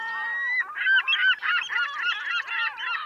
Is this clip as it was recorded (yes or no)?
yes